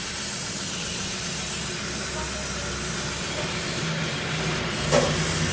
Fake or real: real